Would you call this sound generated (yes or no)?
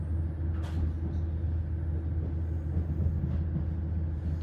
no